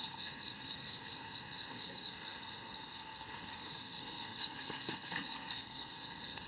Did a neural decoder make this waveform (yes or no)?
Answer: yes